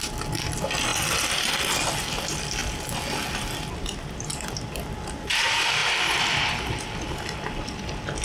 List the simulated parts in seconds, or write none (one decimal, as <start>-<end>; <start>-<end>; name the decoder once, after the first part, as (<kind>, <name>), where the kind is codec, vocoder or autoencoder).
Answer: none